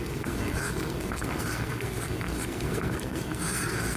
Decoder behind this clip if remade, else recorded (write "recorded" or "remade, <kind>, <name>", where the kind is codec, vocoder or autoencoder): remade, codec, SNAC